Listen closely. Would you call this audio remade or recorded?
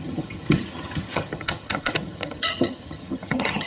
remade